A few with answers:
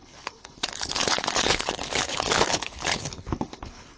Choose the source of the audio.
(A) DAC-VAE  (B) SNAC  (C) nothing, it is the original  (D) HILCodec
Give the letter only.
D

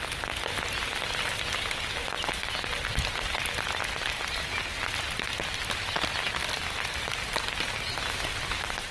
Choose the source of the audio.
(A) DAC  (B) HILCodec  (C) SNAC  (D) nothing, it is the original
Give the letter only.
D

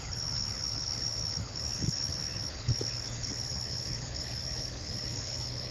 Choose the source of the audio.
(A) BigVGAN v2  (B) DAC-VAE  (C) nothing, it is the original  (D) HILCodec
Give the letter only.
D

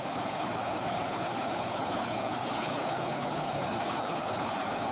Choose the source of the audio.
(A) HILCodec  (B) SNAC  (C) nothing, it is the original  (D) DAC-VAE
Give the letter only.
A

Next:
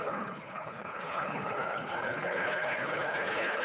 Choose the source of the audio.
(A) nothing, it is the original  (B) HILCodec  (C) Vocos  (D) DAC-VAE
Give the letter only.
B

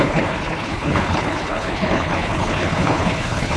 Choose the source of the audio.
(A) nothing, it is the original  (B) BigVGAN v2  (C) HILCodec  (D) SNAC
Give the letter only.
C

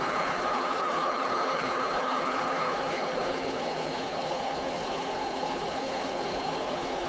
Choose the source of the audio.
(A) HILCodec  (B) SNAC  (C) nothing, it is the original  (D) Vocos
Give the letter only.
A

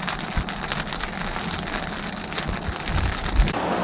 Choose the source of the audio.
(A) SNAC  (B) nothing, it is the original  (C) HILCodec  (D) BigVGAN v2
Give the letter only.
B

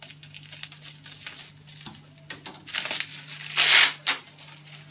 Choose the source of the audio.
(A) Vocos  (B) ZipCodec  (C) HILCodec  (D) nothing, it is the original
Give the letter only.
D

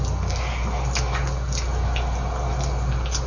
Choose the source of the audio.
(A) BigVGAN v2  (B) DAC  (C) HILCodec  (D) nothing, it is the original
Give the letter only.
D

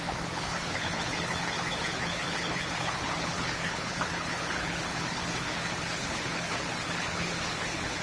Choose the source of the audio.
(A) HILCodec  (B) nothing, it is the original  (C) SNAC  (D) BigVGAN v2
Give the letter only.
A